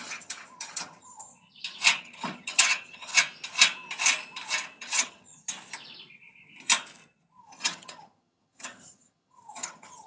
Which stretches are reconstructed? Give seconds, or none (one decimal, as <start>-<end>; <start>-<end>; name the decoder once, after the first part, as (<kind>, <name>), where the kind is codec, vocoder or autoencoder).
0.0-1.3 (vocoder, HiFi-GAN); 2.0-3.1; 4.8-5.3; 7.4-10.1